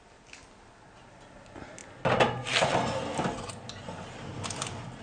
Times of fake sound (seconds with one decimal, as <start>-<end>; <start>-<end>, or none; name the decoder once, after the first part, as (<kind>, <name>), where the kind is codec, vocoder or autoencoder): none